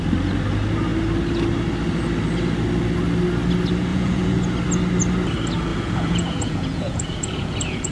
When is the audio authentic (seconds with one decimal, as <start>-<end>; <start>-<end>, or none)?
0.0-3.9; 4.4-5.7